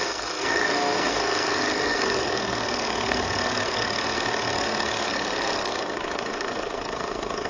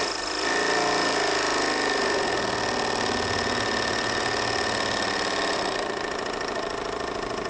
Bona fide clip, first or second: second